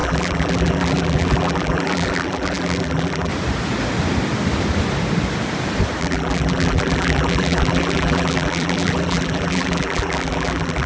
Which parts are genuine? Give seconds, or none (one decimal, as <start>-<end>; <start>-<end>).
3.3-6.0